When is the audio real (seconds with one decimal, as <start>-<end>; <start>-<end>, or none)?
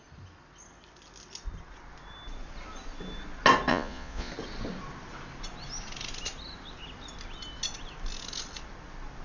0.0-3.7; 4.3-9.2